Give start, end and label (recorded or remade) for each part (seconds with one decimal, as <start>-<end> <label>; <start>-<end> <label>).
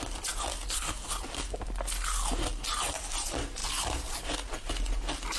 0.0-5.4 recorded